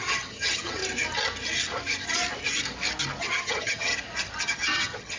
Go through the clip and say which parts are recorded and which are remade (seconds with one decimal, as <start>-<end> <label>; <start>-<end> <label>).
0.0-0.8 remade; 0.8-3.2 recorded; 3.2-3.9 remade; 3.9-4.4 recorded; 4.4-5.2 remade